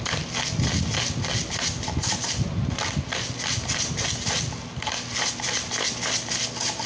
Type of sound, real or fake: real